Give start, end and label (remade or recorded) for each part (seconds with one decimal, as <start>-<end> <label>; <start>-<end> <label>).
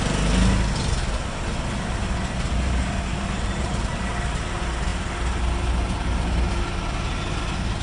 0.0-3.1 recorded; 3.1-4.1 remade; 4.1-7.8 recorded